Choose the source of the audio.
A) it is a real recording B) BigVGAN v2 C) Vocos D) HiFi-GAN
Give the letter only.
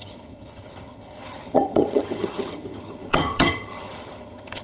D